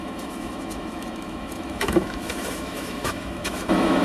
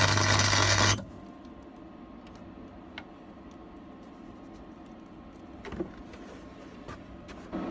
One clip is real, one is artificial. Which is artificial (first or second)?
first